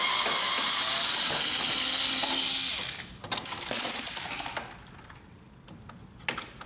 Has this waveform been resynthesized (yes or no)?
no